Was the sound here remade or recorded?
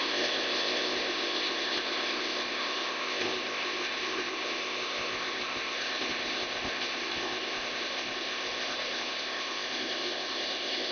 remade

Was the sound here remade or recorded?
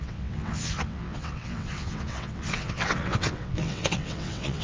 remade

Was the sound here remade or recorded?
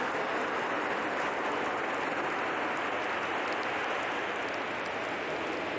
recorded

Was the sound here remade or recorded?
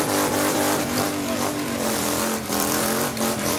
remade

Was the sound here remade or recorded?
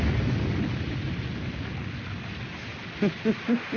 recorded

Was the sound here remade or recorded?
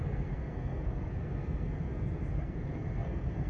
remade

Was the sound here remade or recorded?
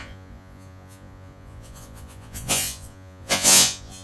remade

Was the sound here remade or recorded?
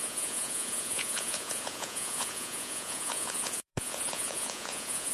remade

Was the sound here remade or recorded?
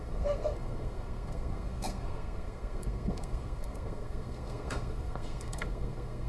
remade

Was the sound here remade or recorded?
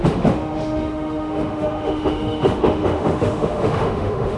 remade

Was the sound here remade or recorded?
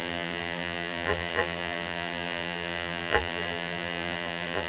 remade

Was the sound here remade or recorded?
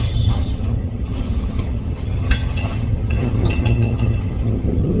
remade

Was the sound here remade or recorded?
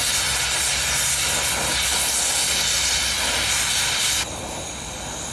recorded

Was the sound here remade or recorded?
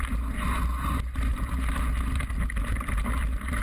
recorded